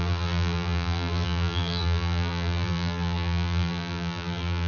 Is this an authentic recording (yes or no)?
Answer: no